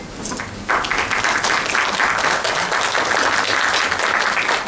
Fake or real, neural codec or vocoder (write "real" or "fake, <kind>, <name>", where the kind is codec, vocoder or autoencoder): real